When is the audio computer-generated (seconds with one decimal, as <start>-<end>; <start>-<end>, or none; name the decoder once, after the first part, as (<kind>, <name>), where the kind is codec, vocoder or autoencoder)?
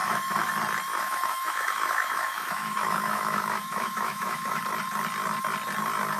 0.0-0.5 (autoencoder, DAC-VAE); 0.9-4.6